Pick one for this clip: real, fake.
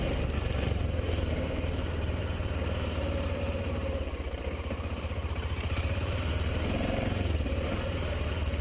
fake